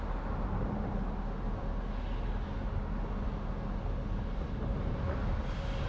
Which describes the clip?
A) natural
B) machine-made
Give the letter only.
A